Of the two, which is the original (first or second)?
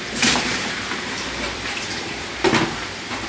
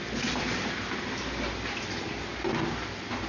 second